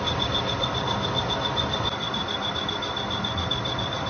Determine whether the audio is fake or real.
real